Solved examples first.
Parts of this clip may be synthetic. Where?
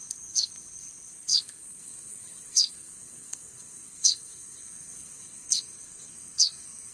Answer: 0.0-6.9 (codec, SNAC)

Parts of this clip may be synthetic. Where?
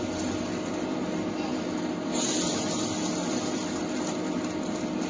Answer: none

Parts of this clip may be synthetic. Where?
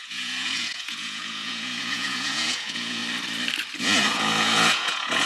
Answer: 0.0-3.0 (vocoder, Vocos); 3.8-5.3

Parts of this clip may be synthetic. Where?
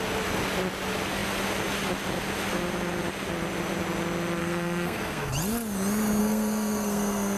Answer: 4.4-5.3 (codec, SNAC); 6.2-7.4